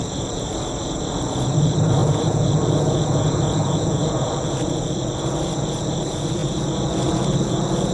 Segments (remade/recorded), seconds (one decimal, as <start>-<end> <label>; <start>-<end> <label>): 0.0-7.9 remade

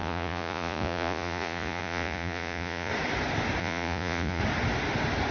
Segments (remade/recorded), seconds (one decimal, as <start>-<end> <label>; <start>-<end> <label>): 0.0-2.9 remade; 2.9-3.6 recorded; 3.6-4.4 remade; 4.4-5.3 recorded

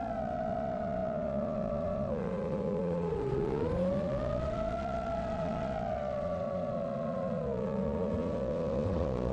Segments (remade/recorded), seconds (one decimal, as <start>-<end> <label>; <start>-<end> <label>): 0.0-9.3 remade